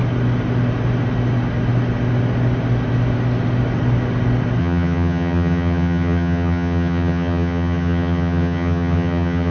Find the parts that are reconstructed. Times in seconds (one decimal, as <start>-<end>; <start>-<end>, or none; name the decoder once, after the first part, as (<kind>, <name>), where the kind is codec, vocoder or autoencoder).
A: 4.6-9.5 (vocoder, HiFi-GAN)